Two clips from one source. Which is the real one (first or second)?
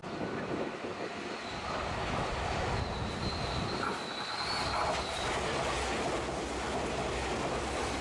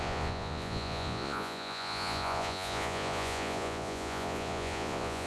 first